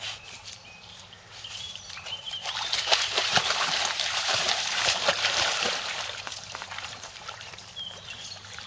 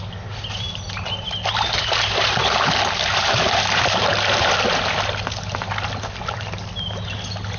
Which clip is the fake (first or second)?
first